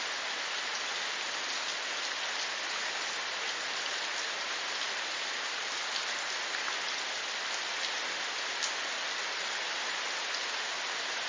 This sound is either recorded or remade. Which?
recorded